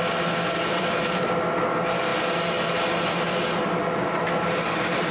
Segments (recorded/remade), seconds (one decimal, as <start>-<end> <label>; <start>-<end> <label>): 0.0-5.1 recorded